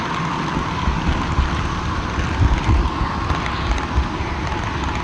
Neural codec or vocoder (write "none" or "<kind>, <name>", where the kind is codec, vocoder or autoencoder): none